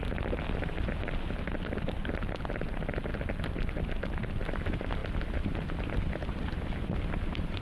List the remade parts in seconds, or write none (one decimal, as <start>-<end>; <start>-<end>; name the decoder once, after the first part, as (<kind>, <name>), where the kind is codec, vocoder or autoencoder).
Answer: none